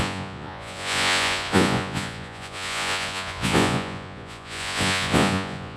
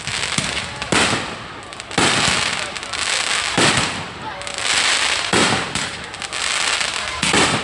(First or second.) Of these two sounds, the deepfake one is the first